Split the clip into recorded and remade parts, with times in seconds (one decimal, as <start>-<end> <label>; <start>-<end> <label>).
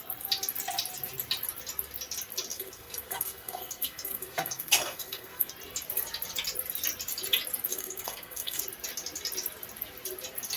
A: 0.0-2.5 recorded; 2.5-5.5 remade; 5.5-7.7 recorded; 7.7-8.6 remade; 8.6-10.6 recorded